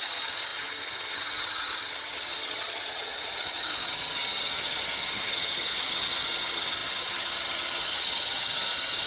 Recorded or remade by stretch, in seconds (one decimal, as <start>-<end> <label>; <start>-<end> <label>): 0.0-9.1 remade